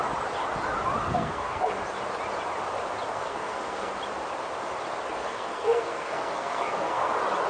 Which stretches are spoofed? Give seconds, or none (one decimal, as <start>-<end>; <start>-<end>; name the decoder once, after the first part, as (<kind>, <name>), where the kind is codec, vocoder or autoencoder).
1.0-1.7 (codec, SNAC); 3.1-3.9; 5.2-7.1